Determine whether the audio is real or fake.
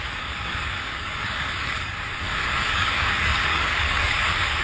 fake